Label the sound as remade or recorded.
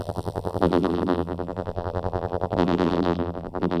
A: remade